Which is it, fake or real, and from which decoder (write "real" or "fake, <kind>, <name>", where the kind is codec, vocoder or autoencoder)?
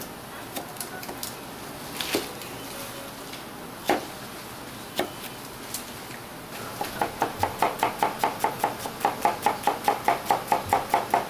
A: real